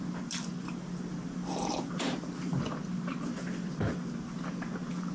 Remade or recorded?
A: recorded